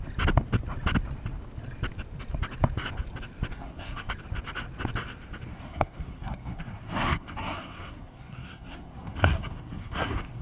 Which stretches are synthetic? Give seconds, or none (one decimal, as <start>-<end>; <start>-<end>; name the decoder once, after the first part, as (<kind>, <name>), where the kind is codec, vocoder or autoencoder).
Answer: 3.5-4.1 (codec, SNAC); 5.5-10.4